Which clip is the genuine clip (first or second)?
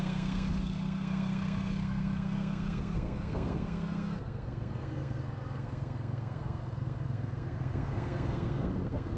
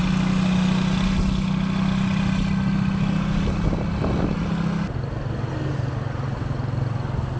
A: second